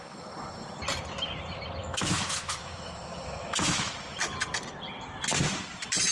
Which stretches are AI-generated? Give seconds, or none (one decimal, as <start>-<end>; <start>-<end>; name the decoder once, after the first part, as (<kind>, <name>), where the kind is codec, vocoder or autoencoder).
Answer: 1.8-3.9 (autoencoder, DAC-VAE)